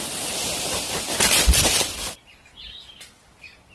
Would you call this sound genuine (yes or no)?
yes